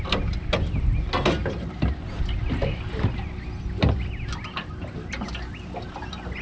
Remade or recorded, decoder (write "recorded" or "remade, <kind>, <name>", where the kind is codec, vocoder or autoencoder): recorded